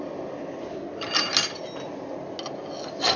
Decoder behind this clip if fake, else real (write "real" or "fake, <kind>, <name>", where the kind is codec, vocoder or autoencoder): real